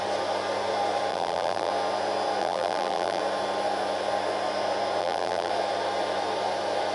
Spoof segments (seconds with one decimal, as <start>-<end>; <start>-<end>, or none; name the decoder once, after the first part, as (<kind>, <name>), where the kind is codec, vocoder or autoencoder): 1.1-1.7 (vocoder, BigVGAN v2); 2.4-3.2; 5.0-5.5